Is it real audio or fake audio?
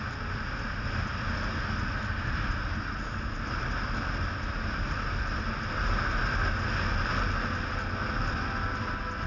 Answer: real